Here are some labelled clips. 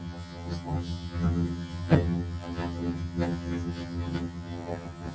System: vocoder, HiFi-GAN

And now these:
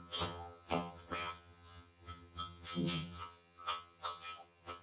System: vocoder, HiFi-GAN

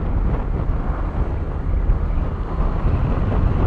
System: none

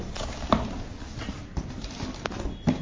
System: none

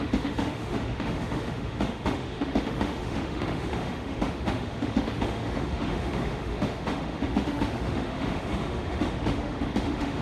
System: autoencoder, DAC-VAE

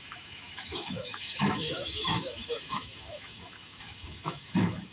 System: autoencoder, DAC-VAE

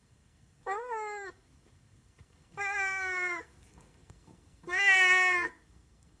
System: codec, SNAC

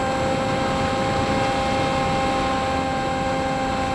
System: none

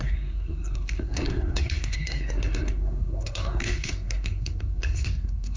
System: codec, SNAC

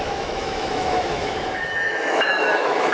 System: autoencoder, DAC-VAE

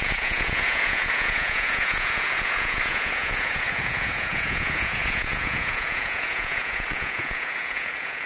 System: vocoder, Vocos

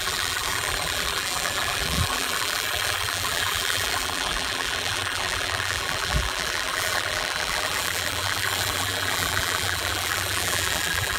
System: vocoder, BigVGAN v2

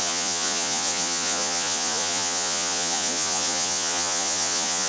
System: vocoder, Vocos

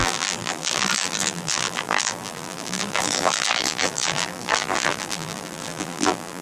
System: vocoder, BigVGAN v2